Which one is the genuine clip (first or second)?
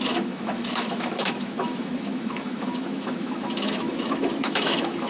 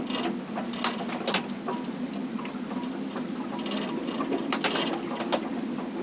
second